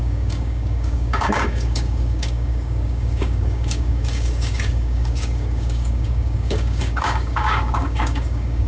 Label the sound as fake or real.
fake